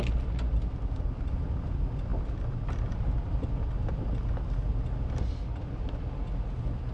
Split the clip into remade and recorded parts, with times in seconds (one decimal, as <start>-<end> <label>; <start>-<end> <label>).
0.0-6.9 recorded